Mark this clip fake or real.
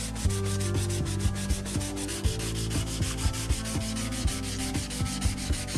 real